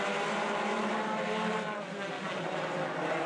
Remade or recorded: recorded